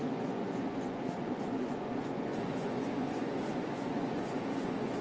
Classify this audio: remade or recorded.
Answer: remade